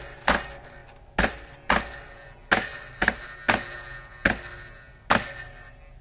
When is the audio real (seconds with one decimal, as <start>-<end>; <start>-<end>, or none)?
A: 0.0-6.0